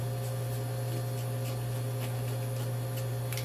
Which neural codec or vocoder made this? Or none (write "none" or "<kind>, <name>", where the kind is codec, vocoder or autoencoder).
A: none